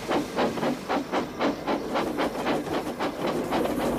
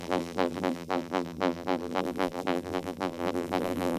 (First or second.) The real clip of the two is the first